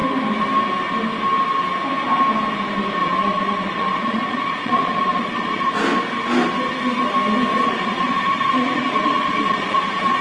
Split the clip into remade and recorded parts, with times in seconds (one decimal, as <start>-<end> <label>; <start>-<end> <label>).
0.0-3.0 recorded; 3.0-5.7 remade; 5.7-7.5 recorded; 7.5-10.2 remade